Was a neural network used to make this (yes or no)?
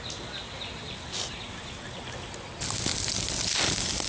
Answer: no